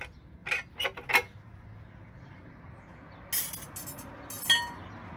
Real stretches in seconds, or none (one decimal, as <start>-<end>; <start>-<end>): 0.0-5.2